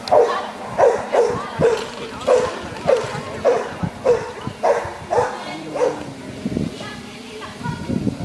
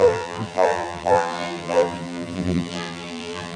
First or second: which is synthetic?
second